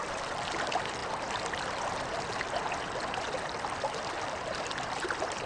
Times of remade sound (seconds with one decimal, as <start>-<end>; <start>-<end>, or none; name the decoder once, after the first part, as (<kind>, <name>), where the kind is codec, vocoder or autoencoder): 0.0-1.0 (vocoder, BigVGAN v2); 4.3-5.5